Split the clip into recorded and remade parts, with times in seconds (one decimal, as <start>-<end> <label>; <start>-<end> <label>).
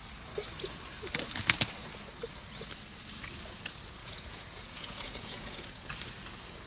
0.0-4.0 recorded; 4.0-5.9 remade; 5.9-6.7 recorded